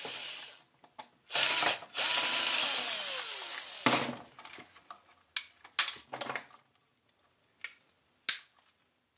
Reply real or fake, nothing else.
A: real